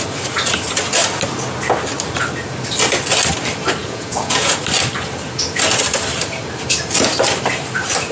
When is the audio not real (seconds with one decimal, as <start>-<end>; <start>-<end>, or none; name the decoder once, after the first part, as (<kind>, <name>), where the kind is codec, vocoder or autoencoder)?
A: 3.8-4.6 (vocoder, Vocos)